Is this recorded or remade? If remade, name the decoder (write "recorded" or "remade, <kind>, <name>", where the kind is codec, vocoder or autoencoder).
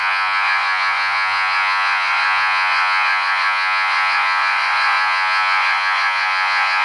remade, vocoder, Vocos